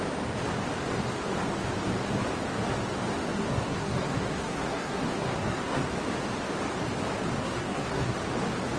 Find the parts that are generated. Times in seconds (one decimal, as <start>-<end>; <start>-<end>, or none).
3.2-5.9; 7.4-8.1

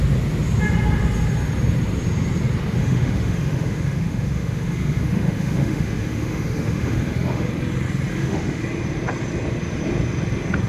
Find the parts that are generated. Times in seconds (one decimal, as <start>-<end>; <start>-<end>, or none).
2.8-7.5; 8.1-8.6

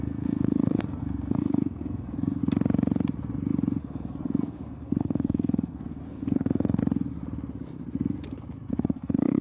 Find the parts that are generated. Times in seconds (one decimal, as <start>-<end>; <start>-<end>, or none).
0.0-2.4; 3.8-6.8; 8.7-9.4